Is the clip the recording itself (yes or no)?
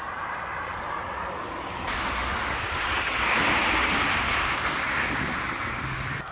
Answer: yes